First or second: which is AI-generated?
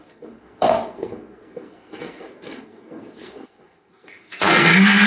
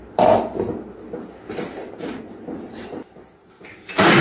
first